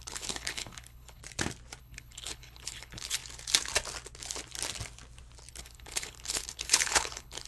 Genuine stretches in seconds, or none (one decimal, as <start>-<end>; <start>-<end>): 1.2-1.8; 3.2-5.5